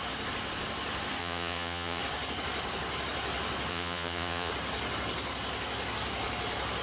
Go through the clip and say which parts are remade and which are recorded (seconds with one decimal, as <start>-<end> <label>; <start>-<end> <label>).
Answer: 0.0-1.2 recorded; 1.2-2.0 remade; 2.0-3.7 recorded; 3.7-4.5 remade; 4.5-6.8 recorded